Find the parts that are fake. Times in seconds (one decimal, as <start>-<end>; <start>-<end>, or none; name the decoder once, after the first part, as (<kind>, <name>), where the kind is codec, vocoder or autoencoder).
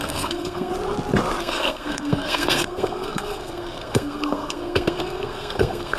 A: 0.0-0.7 (codec, SNAC); 1.4-6.0